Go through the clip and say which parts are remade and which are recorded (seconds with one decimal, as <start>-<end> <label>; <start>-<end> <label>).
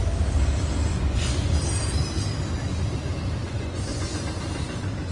0.0-0.9 recorded; 0.9-1.5 remade; 1.5-3.4 recorded; 3.4-4.2 remade; 4.2-5.1 recorded